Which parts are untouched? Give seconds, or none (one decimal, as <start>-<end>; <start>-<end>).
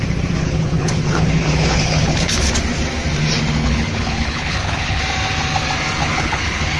0.0-0.4; 2.5-3.6; 5.0-6.0